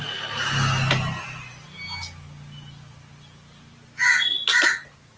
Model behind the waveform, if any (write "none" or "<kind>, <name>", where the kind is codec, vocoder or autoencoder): none